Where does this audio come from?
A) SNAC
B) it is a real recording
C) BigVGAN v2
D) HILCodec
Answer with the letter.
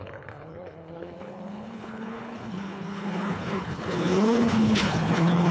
D